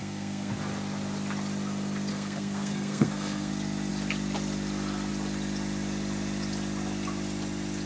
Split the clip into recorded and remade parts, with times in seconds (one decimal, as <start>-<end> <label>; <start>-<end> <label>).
0.0-0.5 remade; 0.5-2.1 recorded; 2.1-3.5 remade; 3.5-7.9 recorded